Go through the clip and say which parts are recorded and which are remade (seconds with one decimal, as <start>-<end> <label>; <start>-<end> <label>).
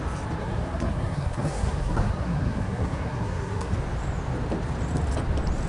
0.0-0.4 recorded; 0.4-3.7 remade; 3.7-5.7 recorded